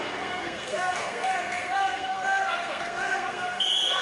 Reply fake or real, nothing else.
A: fake